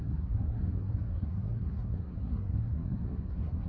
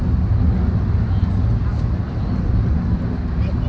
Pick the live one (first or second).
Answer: second